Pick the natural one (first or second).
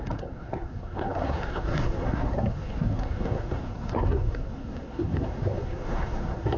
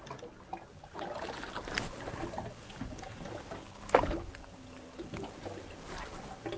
second